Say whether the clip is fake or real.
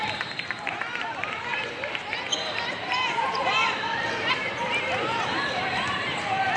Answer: fake